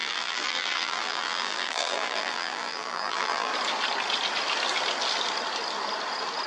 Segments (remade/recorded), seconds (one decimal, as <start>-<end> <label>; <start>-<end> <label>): 0.0-3.5 remade; 3.5-6.5 recorded